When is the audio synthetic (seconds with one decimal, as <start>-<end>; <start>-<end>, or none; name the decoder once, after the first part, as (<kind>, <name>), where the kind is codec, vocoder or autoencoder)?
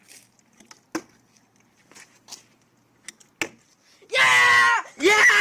none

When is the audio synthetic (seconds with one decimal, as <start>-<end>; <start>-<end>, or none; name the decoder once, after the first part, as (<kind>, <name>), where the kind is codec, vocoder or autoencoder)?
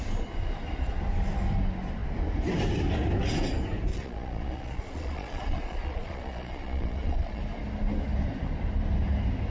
3.9-7.4 (vocoder, Vocos)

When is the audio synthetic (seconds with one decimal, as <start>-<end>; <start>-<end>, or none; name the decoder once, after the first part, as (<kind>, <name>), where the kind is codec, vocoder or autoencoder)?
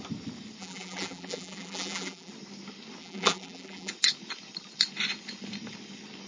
0.6-2.3 (vocoder, BigVGAN v2); 3.0-3.9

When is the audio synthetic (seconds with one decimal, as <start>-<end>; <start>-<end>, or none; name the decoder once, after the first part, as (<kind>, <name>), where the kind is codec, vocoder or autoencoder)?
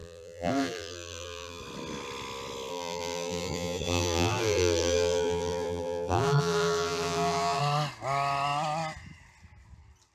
0.0-1.6 (vocoder, BigVGAN v2); 2.7-7.6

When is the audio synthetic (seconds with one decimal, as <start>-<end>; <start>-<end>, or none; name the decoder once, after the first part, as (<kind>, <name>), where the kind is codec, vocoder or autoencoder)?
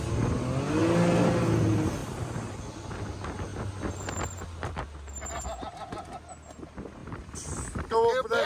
2.0-2.6 (vocoder, BigVGAN v2); 7.0-7.8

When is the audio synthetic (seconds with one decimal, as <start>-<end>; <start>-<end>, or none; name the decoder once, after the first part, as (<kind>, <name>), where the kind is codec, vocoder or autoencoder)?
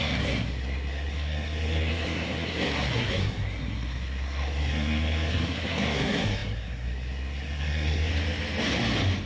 0.0-8.1 (codec, SNAC)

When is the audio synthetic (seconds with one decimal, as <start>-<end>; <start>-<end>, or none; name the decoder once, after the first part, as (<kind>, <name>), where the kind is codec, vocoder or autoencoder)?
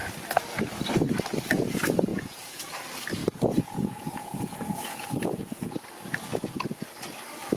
2.1-2.7 (vocoder, Vocos); 3.2-5.7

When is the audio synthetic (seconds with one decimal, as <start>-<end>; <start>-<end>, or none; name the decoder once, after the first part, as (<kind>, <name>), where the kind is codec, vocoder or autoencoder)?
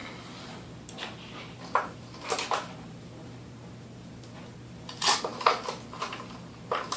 none